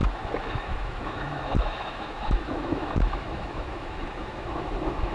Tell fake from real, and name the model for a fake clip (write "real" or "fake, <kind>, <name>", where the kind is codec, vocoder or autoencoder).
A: fake, autoencoder, DAC-VAE